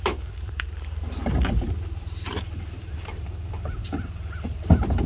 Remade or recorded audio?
remade